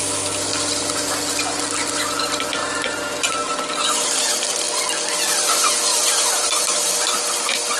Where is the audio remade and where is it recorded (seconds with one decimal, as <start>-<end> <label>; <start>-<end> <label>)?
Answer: 0.0-2.6 recorded; 2.6-4.6 remade; 4.6-5.9 recorded; 5.9-6.9 remade; 6.9-7.8 recorded